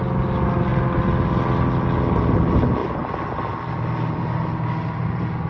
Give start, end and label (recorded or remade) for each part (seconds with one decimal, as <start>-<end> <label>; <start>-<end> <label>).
0.0-2.8 recorded; 2.8-4.2 remade; 4.2-5.5 recorded